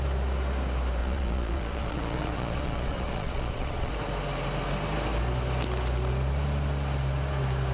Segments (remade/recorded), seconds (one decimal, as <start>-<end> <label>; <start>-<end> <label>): 0.0-1.0 recorded; 1.0-3.9 remade; 3.9-7.7 recorded